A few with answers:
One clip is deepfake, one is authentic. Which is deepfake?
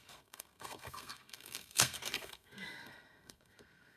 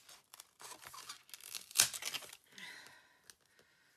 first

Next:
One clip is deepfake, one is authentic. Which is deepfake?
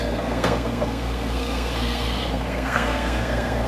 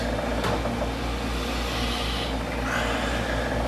first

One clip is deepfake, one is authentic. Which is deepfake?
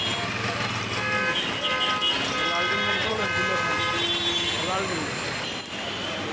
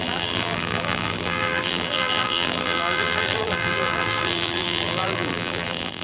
second